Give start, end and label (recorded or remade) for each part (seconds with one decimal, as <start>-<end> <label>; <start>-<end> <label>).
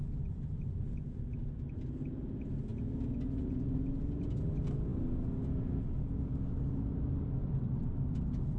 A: 0.0-8.6 recorded